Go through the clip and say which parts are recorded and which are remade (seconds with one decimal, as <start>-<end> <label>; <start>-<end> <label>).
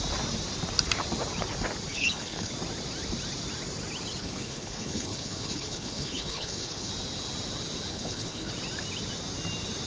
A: 0.0-1.9 recorded; 1.9-2.5 remade; 2.5-4.2 recorded; 4.2-6.9 remade; 6.9-7.9 recorded; 7.9-8.5 remade; 8.5-9.9 recorded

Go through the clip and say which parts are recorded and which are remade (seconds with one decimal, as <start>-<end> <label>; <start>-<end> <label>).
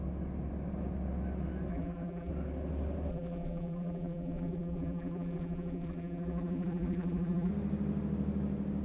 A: 0.0-1.7 recorded; 1.7-2.3 remade; 2.3-3.1 recorded; 3.1-7.5 remade; 7.5-8.8 recorded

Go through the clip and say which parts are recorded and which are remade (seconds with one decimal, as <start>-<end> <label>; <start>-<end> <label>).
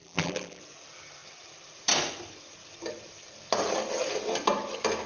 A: 0.0-0.6 remade; 0.6-5.1 recorded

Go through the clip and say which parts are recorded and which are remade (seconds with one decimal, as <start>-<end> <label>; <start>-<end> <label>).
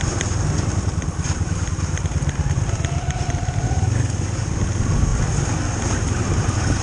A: 0.0-6.8 recorded